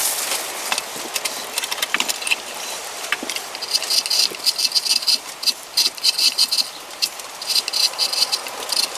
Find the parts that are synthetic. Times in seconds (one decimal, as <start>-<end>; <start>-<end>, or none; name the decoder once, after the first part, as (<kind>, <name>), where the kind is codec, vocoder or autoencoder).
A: none